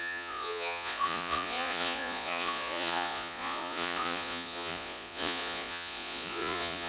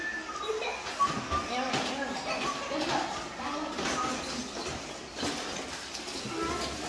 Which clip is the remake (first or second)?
first